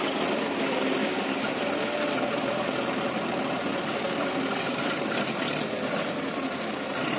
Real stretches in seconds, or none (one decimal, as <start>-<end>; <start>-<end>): 0.0-1.0; 1.6-7.2